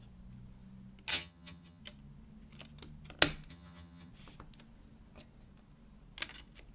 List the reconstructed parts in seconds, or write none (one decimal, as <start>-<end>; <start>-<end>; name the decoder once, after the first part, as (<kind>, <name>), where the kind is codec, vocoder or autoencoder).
1.1-1.8 (vocoder, HiFi-GAN); 3.5-4.1